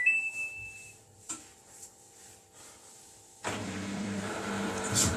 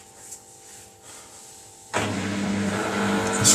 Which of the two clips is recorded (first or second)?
second